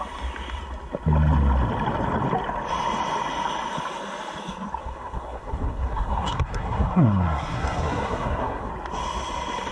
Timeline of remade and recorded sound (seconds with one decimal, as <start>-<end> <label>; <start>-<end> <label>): 0.0-4.8 recorded; 4.8-8.7 remade; 8.7-9.7 recorded